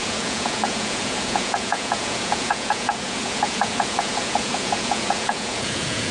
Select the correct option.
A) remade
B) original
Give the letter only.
A